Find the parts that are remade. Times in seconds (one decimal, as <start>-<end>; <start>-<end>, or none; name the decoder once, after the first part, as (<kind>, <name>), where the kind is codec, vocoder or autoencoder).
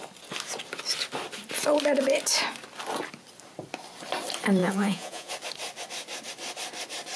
4.6-5.3 (vocoder, Vocos)